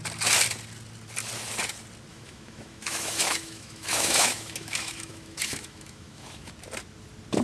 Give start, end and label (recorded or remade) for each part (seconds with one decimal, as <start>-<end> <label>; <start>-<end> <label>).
0.0-2.1 recorded; 2.1-6.5 remade; 6.5-7.4 recorded